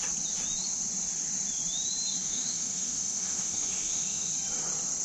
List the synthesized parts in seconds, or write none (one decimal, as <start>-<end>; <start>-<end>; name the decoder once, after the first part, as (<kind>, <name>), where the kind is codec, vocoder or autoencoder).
2.2-4.3 (autoencoder, DAC-VAE)